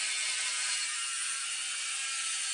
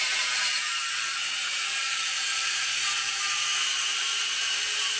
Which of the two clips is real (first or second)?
first